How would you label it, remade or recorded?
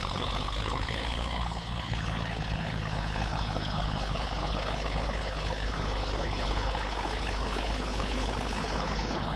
remade